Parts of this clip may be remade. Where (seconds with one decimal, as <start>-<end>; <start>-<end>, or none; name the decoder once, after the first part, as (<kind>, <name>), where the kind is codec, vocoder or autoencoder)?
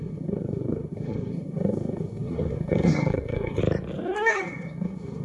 0.0-3.6 (codec, SNAC); 4.3-5.2